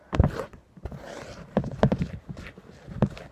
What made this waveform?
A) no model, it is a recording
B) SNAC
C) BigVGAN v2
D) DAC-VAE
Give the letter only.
A